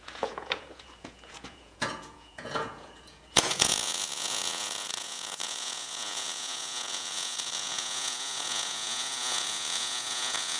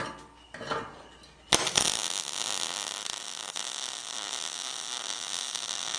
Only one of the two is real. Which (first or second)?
second